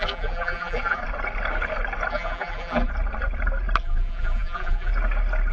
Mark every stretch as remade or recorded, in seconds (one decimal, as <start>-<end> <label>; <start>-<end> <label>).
0.0-1.0 remade; 1.0-2.1 recorded; 2.1-2.9 remade; 2.9-3.8 recorded; 3.8-4.9 remade; 4.9-5.5 recorded